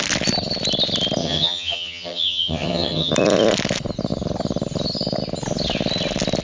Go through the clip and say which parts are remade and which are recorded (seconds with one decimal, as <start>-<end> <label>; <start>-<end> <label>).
0.0-1.2 recorded; 1.2-3.1 remade; 3.1-6.4 recorded